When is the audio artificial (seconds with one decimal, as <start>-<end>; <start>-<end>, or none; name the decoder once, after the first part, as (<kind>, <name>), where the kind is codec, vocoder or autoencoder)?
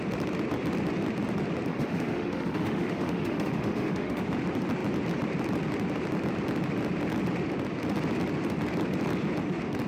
1.7-4.2 (autoencoder, DAC-VAE)